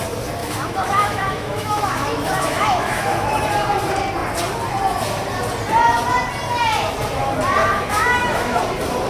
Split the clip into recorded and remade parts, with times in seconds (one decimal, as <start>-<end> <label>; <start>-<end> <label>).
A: 0.0-0.4 recorded; 0.4-3.4 remade; 3.4-7.6 recorded; 7.6-8.6 remade; 8.6-9.1 recorded